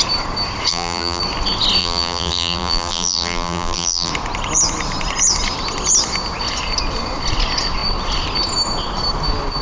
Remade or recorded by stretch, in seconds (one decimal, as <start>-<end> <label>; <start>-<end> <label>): 0.0-0.7 recorded; 0.7-1.2 remade; 1.2-1.8 recorded; 1.8-4.1 remade; 4.1-9.6 recorded